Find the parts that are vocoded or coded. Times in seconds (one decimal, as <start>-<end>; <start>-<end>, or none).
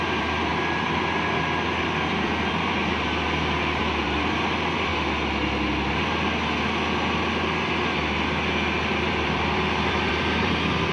0.0-0.5; 1.9-2.8; 3.8-4.9; 8.9-10.9